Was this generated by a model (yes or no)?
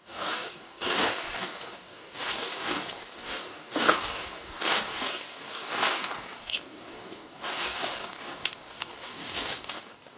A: yes